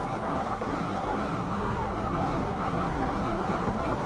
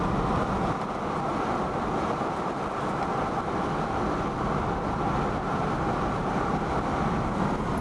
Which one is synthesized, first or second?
first